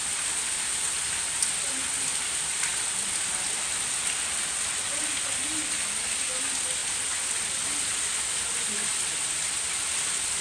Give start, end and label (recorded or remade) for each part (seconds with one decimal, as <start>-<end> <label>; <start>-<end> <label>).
0.0-10.4 recorded

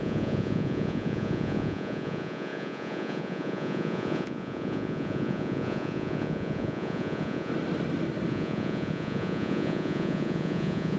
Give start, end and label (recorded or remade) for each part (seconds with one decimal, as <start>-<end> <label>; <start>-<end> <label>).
0.0-7.5 remade; 7.5-8.3 recorded; 8.3-11.0 remade

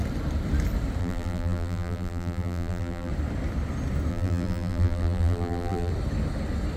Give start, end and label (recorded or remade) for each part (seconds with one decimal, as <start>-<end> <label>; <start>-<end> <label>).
0.0-1.0 recorded; 1.0-3.1 remade; 3.1-4.1 recorded; 4.1-5.9 remade; 5.9-6.8 recorded

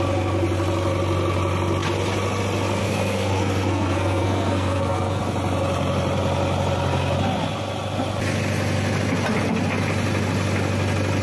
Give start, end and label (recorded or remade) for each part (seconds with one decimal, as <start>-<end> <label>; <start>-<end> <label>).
0.0-2.8 recorded; 2.8-5.2 remade; 5.2-11.2 recorded